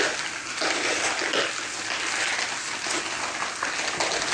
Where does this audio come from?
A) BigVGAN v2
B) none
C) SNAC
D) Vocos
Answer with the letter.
B